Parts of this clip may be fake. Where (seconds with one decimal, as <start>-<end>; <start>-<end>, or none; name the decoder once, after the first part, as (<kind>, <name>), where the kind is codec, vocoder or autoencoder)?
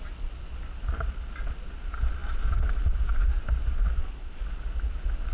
none